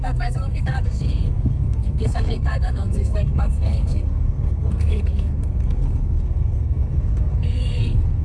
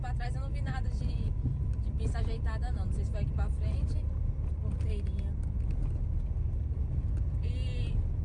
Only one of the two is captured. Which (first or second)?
second